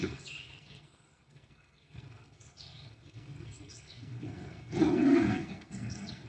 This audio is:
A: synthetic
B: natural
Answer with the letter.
A